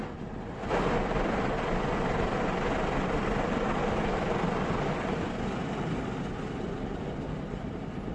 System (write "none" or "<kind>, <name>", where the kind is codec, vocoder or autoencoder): none